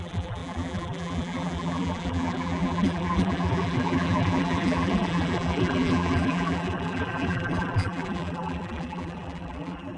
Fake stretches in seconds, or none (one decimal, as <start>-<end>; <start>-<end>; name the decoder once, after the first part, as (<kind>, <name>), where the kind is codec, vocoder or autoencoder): 0.0-10.0 (vocoder, BigVGAN v2)